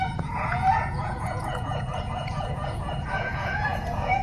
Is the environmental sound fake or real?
fake